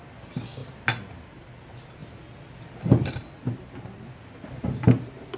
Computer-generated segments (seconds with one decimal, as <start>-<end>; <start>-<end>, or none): none